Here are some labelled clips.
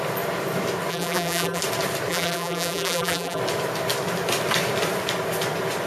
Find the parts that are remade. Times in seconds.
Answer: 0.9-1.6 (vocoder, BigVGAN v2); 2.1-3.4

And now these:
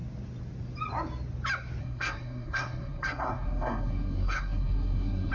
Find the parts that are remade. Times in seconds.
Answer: 1.8-5.3 (codec, SNAC)